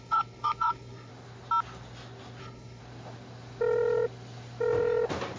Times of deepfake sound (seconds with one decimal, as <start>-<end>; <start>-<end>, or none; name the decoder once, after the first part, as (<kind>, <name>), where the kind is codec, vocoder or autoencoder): 0.0-1.1 (codec, HILCodec); 2.4-2.8